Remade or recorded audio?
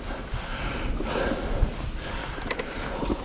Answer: recorded